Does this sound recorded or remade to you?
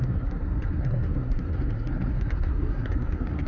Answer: remade